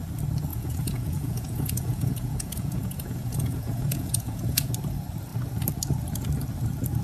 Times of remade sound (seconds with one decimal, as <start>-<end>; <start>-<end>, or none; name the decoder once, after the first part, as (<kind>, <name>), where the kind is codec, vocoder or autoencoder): 0.5-4.7 (vocoder, Vocos)